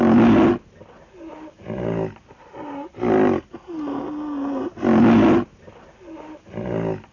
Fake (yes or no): no